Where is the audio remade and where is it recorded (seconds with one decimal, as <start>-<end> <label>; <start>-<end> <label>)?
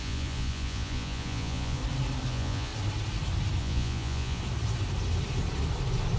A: 0.0-1.8 remade; 1.8-2.3 recorded; 2.3-2.7 remade; 2.7-3.6 recorded; 3.6-4.4 remade; 4.4-6.2 recorded